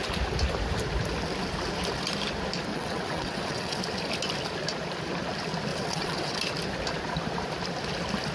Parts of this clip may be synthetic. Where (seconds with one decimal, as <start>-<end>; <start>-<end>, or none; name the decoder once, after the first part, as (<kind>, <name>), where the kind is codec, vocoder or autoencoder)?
2.7-3.8 (vocoder, WaveNeXt); 5.7-6.4